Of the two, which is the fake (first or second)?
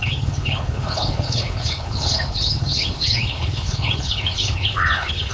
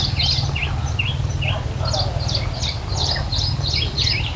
first